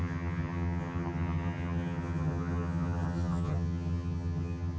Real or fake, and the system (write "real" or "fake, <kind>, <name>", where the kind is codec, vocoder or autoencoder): fake, vocoder, HiFi-GAN